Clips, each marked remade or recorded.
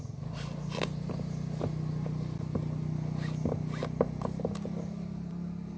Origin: recorded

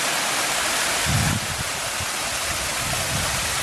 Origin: recorded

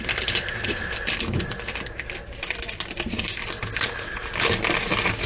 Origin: recorded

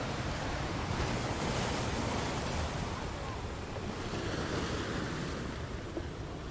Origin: recorded